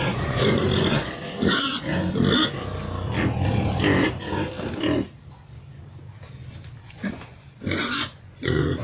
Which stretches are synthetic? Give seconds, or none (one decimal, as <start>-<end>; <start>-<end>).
0.0-1.9; 6.8-8.8